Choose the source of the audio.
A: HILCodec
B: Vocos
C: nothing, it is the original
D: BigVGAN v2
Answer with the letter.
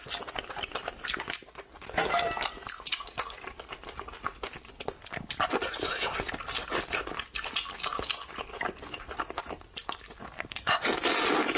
C